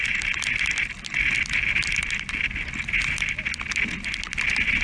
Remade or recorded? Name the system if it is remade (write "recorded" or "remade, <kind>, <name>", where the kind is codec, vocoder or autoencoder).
recorded